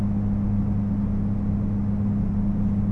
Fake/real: real